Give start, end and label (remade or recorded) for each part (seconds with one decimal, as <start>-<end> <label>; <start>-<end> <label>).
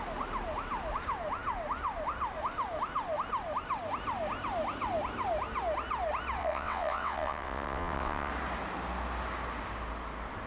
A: 0.0-6.4 recorded; 6.4-8.3 remade; 8.3-10.5 recorded